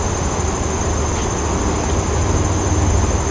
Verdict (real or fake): real